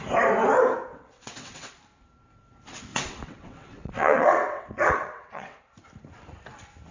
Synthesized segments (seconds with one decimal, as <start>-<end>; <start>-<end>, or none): 0.9-1.7; 2.9-5.6